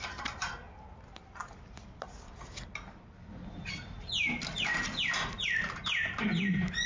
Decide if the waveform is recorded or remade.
recorded